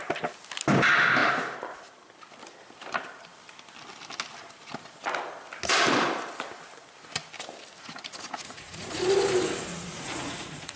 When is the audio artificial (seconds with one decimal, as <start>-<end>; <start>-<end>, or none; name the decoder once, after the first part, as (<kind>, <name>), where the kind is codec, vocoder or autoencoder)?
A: 7.8-8.9 (vocoder, Vocos); 9.7-10.8